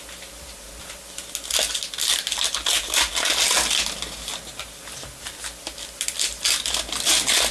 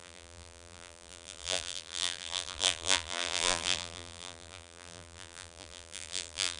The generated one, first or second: second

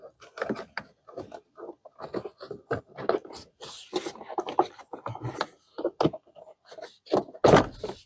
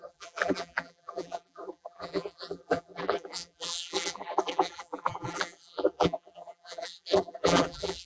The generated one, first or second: second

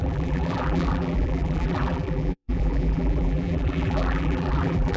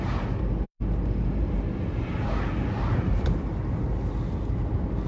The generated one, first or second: first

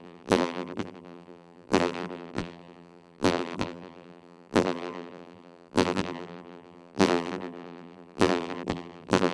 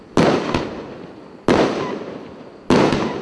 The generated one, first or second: first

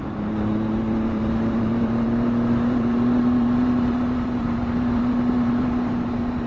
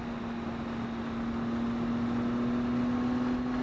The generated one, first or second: first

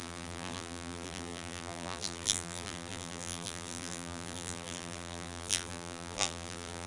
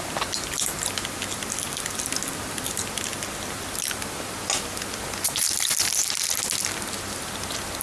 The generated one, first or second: first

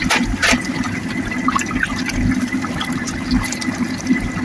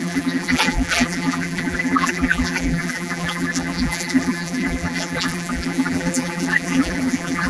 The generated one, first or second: second